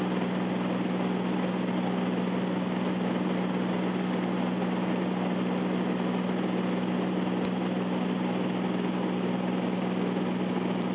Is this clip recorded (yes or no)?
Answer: yes